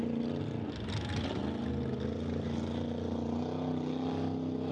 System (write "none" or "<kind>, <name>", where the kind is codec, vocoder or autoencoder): none